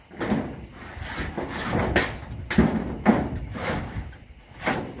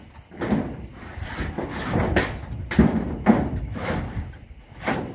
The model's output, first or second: second